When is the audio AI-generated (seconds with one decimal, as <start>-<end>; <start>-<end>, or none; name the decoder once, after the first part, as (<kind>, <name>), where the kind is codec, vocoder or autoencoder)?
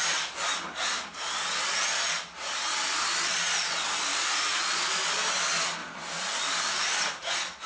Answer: 4.1-4.9 (vocoder, BigVGAN v2); 5.8-6.4